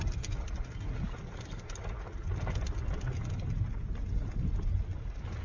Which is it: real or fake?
real